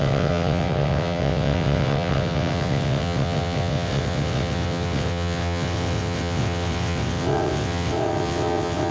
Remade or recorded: remade